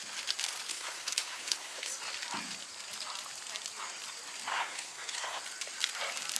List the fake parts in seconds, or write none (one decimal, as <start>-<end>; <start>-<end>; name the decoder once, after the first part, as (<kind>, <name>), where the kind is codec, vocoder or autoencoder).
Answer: 0.7-1.9 (codec, SNAC); 4.5-5.4

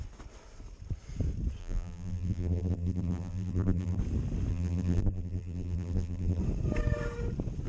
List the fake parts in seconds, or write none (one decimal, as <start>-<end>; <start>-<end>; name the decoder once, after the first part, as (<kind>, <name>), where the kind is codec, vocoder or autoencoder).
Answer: 1.6-4.0 (vocoder, BigVGAN v2); 4.5-6.4